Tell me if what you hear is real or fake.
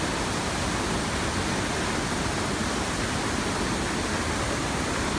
real